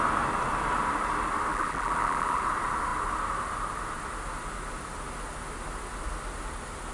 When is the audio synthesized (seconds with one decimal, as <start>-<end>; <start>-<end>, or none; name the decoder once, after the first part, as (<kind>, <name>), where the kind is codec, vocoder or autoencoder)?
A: 1.5-2.4 (vocoder, BigVGAN v2)